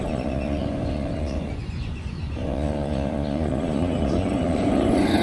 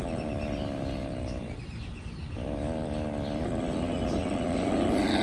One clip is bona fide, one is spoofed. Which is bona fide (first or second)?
second